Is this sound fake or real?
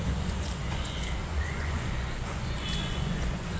fake